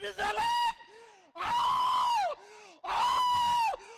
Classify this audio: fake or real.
fake